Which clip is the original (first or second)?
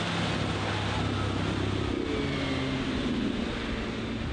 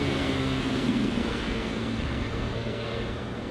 first